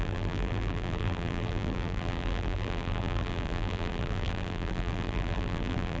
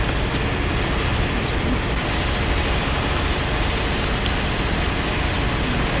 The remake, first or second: first